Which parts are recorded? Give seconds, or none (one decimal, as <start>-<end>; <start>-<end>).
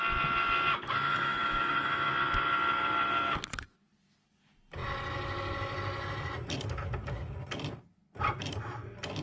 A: 0.0-1.1; 2.1-9.2